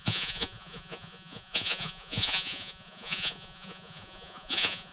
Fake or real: fake